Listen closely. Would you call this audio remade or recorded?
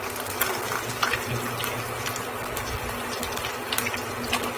recorded